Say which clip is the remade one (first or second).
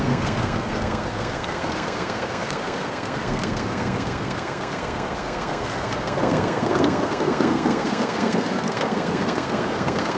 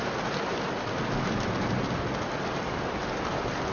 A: first